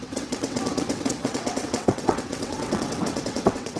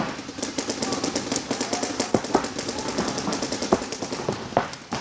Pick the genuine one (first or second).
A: second